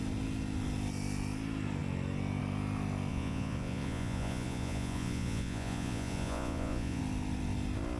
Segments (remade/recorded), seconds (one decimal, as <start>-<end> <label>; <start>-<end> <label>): 0.0-3.1 recorded; 3.1-7.0 remade; 7.0-8.0 recorded